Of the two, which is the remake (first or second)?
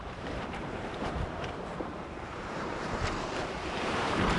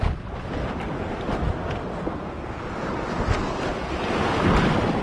first